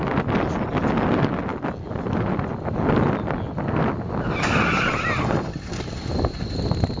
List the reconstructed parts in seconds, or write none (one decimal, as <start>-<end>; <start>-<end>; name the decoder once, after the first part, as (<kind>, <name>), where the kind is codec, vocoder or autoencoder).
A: none